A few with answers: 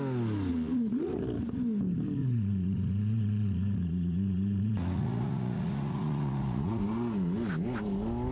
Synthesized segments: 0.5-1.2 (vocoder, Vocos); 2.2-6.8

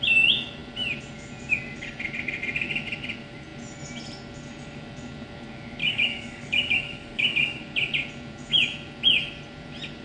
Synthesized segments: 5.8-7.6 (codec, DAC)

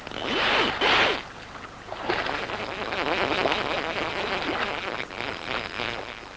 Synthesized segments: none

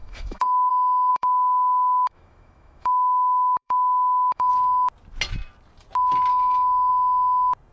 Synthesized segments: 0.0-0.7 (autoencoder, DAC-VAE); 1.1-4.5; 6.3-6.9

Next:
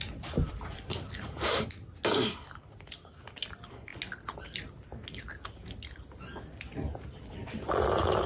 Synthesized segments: none